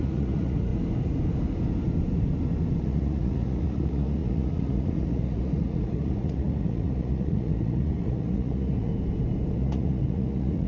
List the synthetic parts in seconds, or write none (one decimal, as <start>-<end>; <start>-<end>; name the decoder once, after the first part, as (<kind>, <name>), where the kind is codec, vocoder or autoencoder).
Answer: 0.0-0.7 (vocoder, Vocos); 2.8-8.9; 9.5-10.7